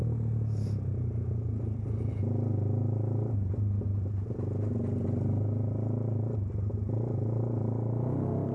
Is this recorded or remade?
recorded